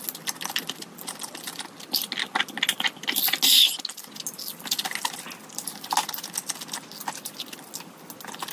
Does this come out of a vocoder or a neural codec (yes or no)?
no